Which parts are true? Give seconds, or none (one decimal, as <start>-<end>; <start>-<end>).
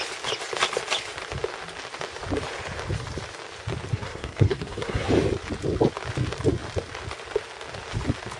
0.0-3.9; 5.1-8.4